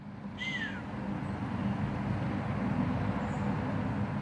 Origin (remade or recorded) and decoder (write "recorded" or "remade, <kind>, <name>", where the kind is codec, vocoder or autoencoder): recorded